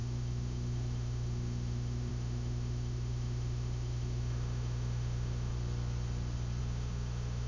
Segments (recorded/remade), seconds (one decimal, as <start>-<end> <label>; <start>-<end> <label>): 0.0-5.5 remade; 5.5-6.6 recorded; 6.6-7.5 remade

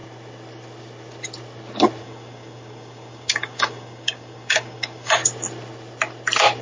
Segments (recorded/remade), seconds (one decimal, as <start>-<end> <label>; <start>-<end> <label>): 0.0-2.0 recorded; 2.0-5.2 remade; 5.2-6.6 recorded